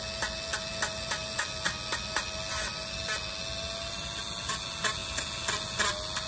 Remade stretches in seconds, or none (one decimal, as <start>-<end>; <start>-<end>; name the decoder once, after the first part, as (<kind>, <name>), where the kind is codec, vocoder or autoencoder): none